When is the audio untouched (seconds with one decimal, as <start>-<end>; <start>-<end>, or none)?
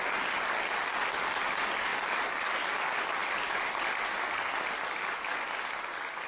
0.0-3.2; 4.3-6.3